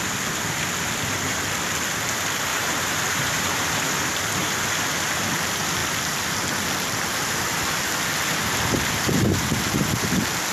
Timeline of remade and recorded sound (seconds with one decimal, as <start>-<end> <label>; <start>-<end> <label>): 0.0-2.5 recorded; 2.5-4.6 remade; 4.6-10.5 recorded